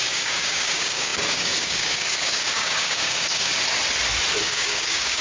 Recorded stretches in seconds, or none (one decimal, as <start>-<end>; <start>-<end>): 3.5-4.4